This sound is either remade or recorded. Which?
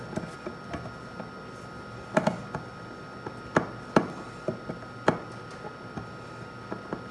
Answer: recorded